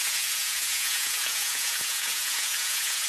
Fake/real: fake